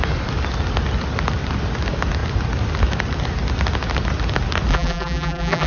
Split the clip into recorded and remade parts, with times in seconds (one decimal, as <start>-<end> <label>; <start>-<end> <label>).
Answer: 0.0-4.7 recorded; 4.7-5.7 remade